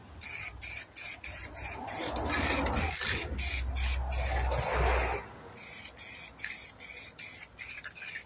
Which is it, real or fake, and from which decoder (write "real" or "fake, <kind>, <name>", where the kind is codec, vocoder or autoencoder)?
real